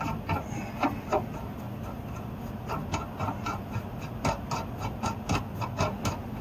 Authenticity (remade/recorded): recorded